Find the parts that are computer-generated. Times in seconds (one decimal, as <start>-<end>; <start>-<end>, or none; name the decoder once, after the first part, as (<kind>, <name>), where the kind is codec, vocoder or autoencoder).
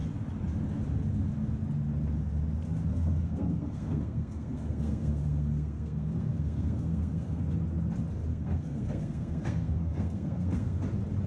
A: 2.9-7.4 (codec, SNAC); 8.3-10.8